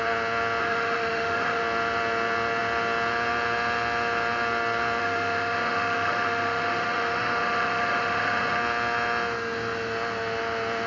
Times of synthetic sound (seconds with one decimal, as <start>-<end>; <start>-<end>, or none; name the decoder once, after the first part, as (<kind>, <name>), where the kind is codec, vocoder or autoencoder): 0.6-1.6 (autoencoder, DAC-VAE); 5.0-8.6